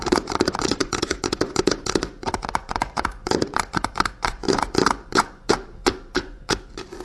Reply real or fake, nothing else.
fake